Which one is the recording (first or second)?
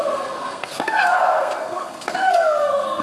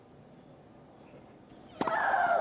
second